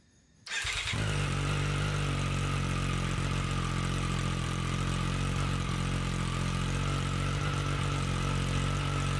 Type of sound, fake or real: real